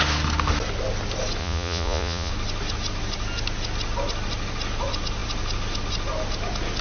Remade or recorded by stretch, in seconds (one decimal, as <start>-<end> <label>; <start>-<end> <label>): 0.0-1.4 recorded; 1.4-2.3 remade; 2.3-6.8 recorded